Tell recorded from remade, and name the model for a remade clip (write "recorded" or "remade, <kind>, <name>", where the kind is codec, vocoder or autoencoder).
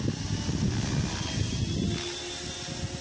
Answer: recorded